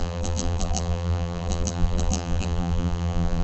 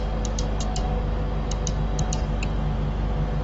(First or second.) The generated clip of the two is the first